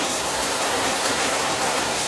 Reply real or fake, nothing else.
fake